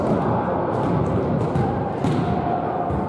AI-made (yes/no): no